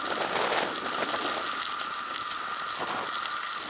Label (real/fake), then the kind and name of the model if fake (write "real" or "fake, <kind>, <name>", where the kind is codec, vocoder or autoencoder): real